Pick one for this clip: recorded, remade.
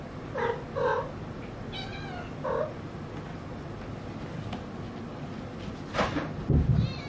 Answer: recorded